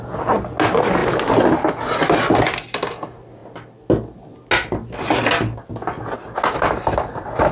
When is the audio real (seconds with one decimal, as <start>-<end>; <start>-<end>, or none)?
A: 0.0-7.5